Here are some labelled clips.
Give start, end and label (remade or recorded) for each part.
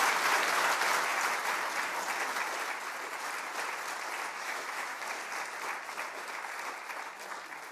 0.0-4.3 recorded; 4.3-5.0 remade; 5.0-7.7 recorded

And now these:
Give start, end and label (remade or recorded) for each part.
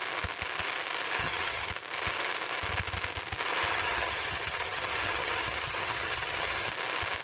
0.0-1.2 recorded; 1.2-1.7 remade; 1.7-3.7 recorded; 3.7-6.7 remade; 6.7-7.2 recorded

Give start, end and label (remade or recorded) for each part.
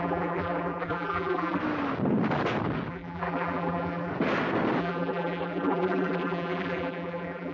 0.0-1.6 remade; 1.6-2.9 recorded; 2.9-4.1 remade; 4.1-4.8 recorded; 4.8-7.5 remade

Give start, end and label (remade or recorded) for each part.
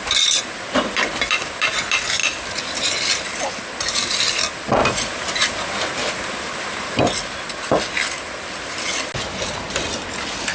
0.0-4.8 recorded; 4.8-7.0 remade; 7.0-10.5 recorded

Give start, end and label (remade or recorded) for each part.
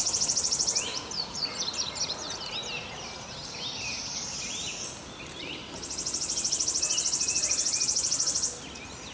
0.0-0.9 recorded; 0.9-2.5 remade; 2.5-9.1 recorded